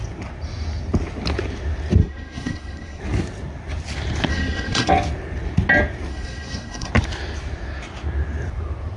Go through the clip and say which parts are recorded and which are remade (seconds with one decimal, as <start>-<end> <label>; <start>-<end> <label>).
0.0-2.0 recorded; 2.0-3.0 remade; 3.0-4.3 recorded; 4.3-4.9 remade; 4.9-6.1 recorded; 6.1-6.9 remade; 6.9-9.0 recorded